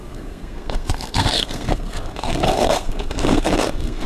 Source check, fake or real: fake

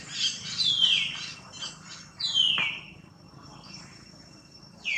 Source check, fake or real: real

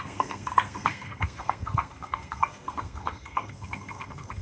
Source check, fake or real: fake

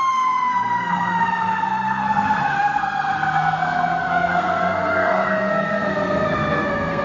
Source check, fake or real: fake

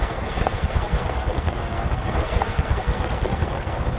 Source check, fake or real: fake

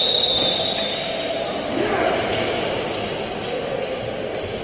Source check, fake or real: real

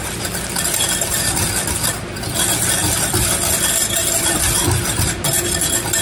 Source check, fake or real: real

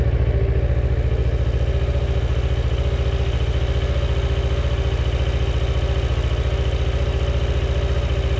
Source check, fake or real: real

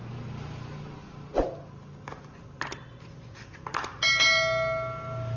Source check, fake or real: real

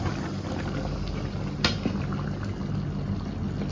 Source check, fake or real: real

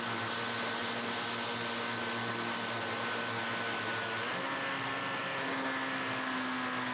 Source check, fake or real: real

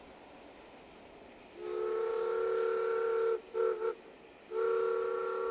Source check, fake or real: real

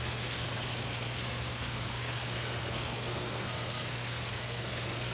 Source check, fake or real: fake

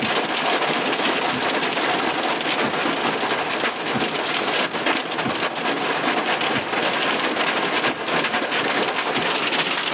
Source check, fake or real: real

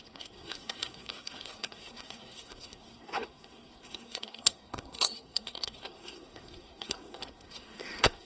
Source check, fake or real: fake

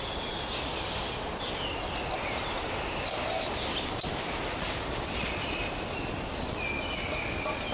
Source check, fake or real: real